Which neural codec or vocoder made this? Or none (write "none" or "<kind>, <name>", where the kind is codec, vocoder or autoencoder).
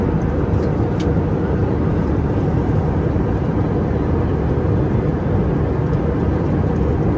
none